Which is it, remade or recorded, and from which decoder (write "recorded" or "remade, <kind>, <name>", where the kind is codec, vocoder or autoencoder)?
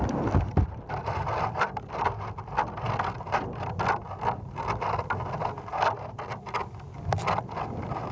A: recorded